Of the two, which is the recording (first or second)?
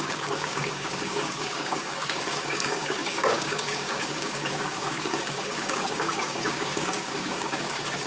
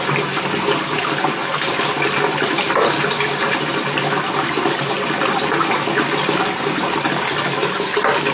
second